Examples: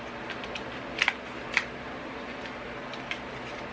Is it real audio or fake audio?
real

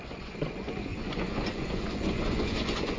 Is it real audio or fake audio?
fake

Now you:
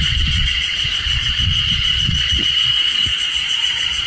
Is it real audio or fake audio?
fake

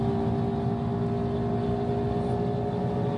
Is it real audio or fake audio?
real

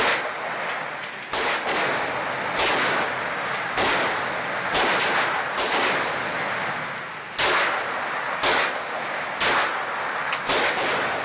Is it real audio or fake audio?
real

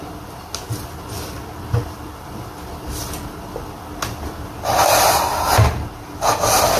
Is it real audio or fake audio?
real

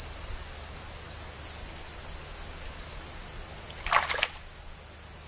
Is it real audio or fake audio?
real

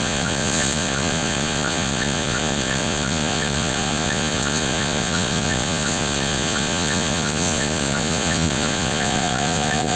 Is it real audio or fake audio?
fake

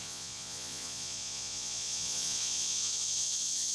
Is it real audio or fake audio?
fake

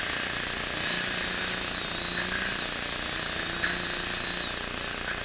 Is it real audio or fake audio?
real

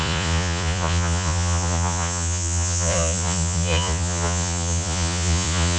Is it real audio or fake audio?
fake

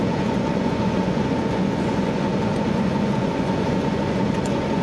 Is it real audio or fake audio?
fake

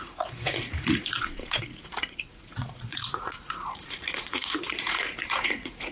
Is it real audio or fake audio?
fake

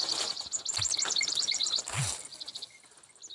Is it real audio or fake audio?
real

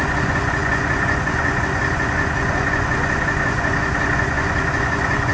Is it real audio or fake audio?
fake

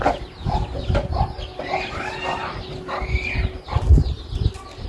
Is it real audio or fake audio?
real